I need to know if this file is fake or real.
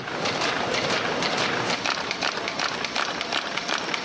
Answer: fake